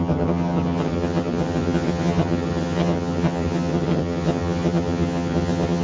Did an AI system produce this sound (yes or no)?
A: yes